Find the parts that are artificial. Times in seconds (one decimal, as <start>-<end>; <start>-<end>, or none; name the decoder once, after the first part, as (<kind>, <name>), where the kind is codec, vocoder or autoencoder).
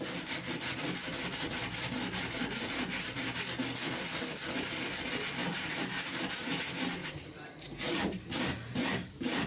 5.4-6.4 (vocoder, BigVGAN v2); 7.0-9.5